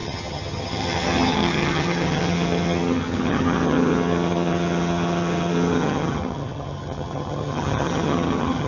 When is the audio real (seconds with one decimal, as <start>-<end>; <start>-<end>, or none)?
none